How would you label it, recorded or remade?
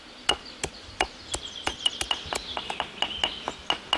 recorded